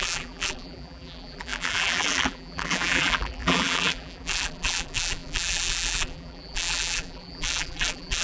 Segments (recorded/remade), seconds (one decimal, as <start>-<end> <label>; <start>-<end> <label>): 0.0-8.2 remade